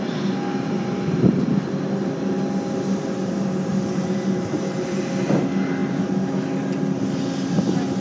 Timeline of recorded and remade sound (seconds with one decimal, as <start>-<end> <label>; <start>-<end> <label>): 0.0-8.0 recorded